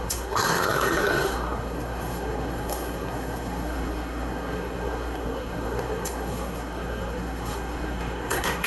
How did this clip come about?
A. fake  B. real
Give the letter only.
A